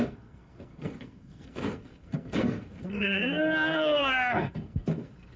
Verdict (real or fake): fake